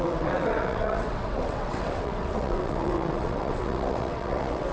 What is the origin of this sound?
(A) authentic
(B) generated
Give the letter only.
B